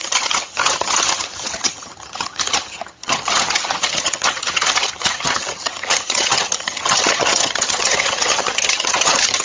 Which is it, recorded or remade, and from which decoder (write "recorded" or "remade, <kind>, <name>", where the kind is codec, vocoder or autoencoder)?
remade, vocoder, HiFi-GAN